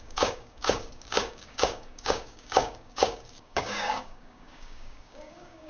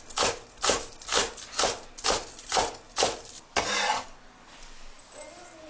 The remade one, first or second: first